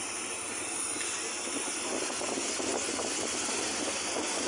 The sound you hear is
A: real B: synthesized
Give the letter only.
A